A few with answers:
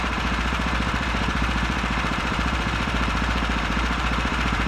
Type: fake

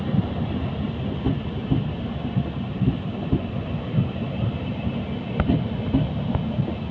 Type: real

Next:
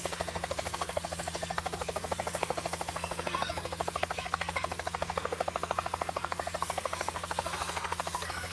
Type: fake